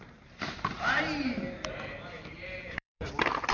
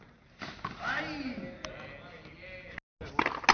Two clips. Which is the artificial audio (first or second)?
first